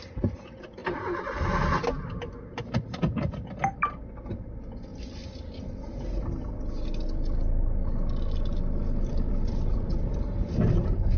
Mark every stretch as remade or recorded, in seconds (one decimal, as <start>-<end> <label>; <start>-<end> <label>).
0.0-11.2 recorded

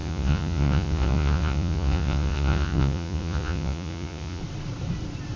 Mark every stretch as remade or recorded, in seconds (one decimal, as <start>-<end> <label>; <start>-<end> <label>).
0.0-4.4 remade; 4.4-5.4 recorded

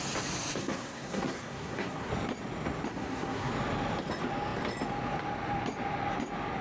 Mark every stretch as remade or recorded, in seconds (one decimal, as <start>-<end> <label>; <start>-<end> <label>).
0.0-0.6 recorded; 0.6-2.1 remade; 2.1-2.9 recorded; 2.9-3.5 remade; 3.5-6.6 recorded

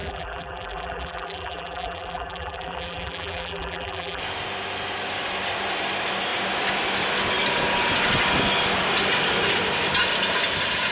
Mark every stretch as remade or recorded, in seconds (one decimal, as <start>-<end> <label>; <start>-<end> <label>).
0.0-4.2 remade; 4.2-10.9 recorded

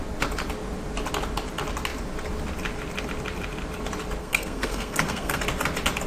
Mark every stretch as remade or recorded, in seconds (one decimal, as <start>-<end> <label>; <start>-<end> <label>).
0.0-4.2 recorded; 4.2-5.4 remade; 5.4-6.1 recorded

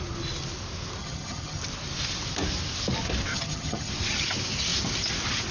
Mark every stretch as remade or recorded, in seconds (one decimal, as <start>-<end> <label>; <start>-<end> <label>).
0.0-1.0 recorded; 1.0-1.6 remade; 1.6-3.3 recorded; 3.3-3.9 remade; 3.9-5.5 recorded

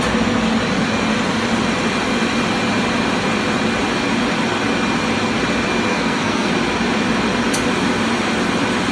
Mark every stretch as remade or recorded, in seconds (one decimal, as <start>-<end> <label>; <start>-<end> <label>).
0.0-5.9 recorded; 5.9-6.5 remade; 6.5-8.9 recorded

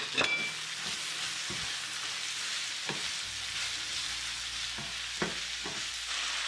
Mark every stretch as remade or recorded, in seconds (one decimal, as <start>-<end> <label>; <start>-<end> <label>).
0.0-6.5 recorded